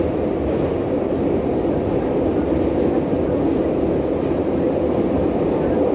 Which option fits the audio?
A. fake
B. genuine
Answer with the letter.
B